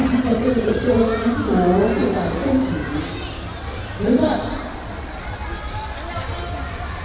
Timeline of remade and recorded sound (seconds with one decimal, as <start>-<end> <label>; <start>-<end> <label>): 0.0-0.9 remade; 0.9-7.0 recorded